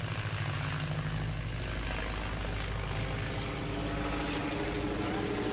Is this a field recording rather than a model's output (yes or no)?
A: yes